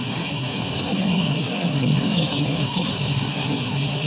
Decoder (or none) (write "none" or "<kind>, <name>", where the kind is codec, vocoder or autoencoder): codec, SNAC